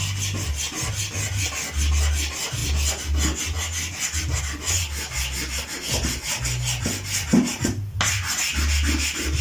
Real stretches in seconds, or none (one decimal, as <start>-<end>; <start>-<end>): 0.0-9.4